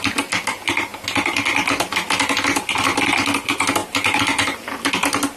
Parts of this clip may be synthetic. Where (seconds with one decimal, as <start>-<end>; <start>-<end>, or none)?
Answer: 3.8-4.9